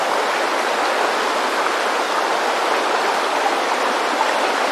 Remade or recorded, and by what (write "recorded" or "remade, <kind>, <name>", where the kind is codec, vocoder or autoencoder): recorded